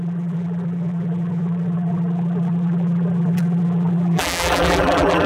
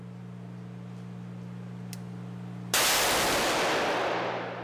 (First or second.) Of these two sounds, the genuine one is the second